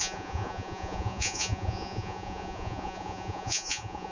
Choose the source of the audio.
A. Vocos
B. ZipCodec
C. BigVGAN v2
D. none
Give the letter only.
A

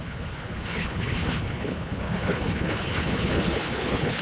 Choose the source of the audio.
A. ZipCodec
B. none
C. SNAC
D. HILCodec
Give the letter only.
D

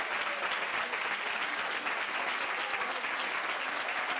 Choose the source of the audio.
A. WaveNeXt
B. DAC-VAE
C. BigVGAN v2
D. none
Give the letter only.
D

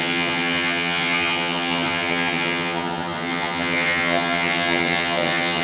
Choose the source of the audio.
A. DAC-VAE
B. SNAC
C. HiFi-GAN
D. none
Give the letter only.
C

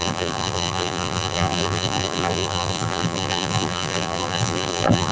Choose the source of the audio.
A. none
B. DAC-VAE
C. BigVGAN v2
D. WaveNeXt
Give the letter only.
C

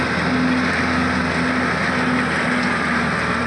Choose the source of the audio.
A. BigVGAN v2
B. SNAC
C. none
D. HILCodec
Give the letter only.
C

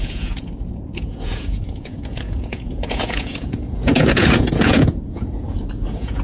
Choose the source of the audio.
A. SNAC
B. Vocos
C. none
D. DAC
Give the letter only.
B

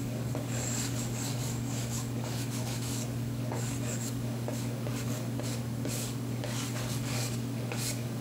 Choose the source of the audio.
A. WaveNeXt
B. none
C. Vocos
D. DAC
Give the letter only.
D